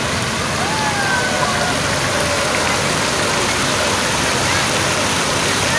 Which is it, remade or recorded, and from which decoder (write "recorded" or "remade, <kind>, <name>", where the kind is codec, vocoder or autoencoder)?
recorded